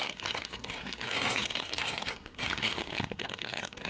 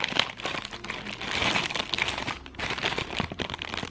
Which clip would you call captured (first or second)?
second